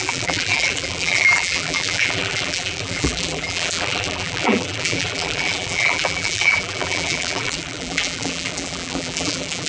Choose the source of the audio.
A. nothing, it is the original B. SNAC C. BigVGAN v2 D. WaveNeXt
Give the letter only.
C